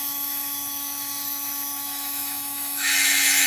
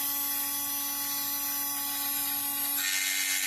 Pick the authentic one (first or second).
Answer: second